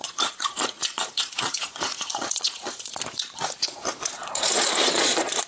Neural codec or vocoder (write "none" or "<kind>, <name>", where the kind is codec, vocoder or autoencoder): vocoder, Vocos